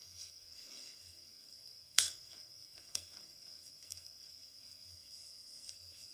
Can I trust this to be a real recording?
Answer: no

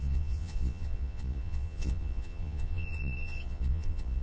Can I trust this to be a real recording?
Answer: no